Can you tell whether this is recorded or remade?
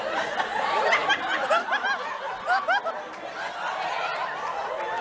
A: recorded